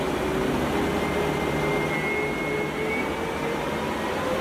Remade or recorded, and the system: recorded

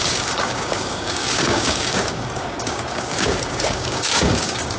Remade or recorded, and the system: remade, codec, DAC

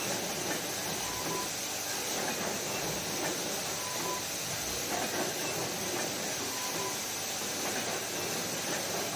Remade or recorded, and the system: recorded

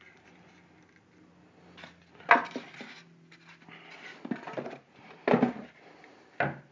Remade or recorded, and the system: recorded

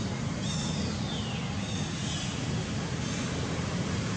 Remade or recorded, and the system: recorded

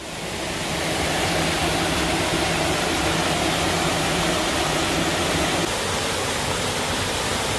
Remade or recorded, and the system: recorded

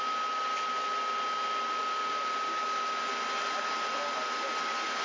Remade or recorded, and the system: recorded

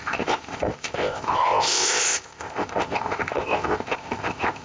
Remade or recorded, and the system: remade, codec, ZipCodec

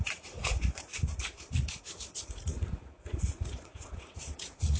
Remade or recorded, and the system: remade, vocoder, Vocos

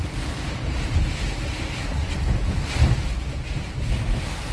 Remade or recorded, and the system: recorded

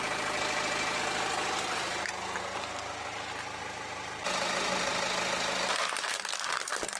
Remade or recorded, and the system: recorded